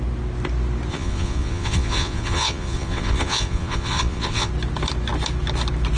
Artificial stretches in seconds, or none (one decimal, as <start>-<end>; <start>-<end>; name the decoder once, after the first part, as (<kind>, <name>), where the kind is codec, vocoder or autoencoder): 0.9-4.5 (vocoder, Vocos)